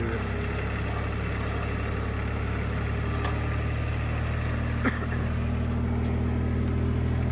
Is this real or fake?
real